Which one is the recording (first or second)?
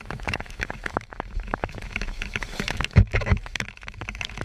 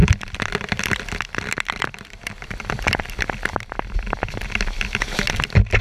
second